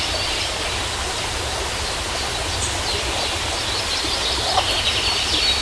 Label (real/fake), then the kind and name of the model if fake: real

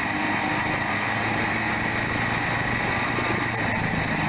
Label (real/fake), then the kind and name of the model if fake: real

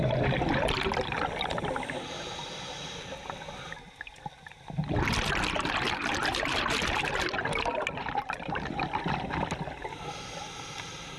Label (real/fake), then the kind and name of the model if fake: real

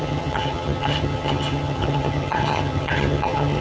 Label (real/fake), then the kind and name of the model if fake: fake, vocoder, HiFi-GAN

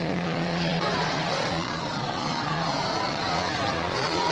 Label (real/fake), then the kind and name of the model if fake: fake, vocoder, Vocos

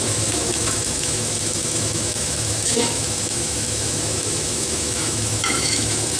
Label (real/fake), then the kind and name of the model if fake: fake, autoencoder, DAC-VAE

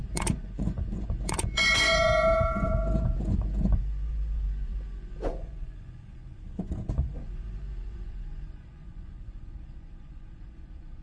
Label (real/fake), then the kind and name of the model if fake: fake, vocoder, Vocos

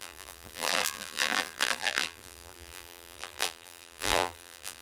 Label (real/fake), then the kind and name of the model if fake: fake, vocoder, BigVGAN v2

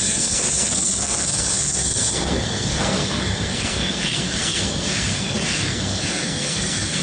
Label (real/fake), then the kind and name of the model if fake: fake, codec, SNAC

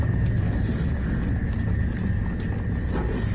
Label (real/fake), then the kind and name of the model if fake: real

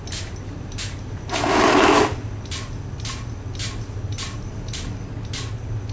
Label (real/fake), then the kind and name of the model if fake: real